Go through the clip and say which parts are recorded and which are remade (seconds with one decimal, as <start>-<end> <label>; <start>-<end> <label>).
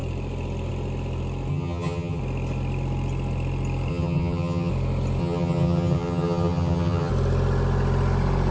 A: 0.0-1.5 recorded; 1.5-2.2 remade; 2.2-3.9 recorded; 3.9-4.7 remade; 4.7-5.2 recorded; 5.2-7.1 remade; 7.1-8.5 recorded